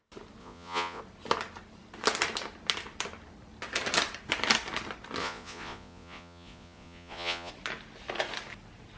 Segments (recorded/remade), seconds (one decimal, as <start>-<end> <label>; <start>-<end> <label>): 0.0-0.4 recorded; 0.4-1.0 remade; 1.0-5.2 recorded; 5.2-7.5 remade; 7.5-9.0 recorded

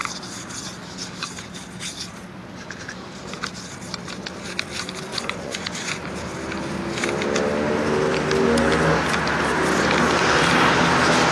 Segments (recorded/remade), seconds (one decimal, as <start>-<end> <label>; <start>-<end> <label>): 0.0-5.1 recorded; 5.1-6.2 remade; 6.2-11.3 recorded

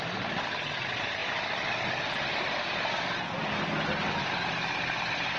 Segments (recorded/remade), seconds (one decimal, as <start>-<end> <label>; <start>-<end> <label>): 0.0-5.4 recorded

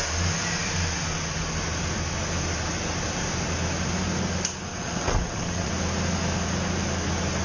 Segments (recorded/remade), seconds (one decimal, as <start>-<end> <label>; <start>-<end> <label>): 0.0-4.7 recorded; 4.7-5.7 remade; 5.7-7.4 recorded

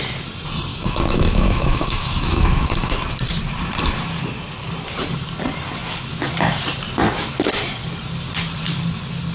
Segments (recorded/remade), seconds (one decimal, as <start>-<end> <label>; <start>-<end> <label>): 0.0-0.7 recorded; 0.7-3.0 remade; 3.0-9.3 recorded

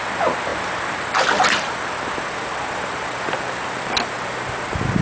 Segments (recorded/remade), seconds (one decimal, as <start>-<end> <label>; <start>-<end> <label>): 0.0-5.0 recorded

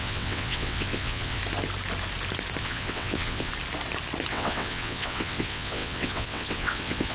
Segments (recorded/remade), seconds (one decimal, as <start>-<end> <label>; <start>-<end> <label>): 0.0-1.4 remade; 1.4-2.6 recorded; 2.6-3.5 remade; 3.5-4.3 recorded; 4.3-7.1 remade